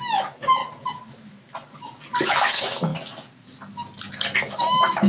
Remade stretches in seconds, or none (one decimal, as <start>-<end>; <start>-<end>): 0.0-0.6; 2.2-2.9; 4.5-5.1